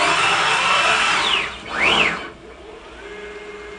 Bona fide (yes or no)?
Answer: yes